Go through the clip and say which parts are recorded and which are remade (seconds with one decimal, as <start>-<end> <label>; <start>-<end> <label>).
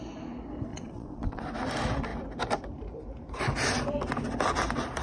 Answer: 0.0-0.7 recorded; 0.7-1.4 remade; 1.4-5.0 recorded